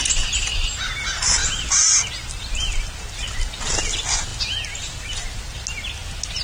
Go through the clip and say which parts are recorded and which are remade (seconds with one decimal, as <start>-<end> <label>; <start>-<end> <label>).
0.0-6.4 recorded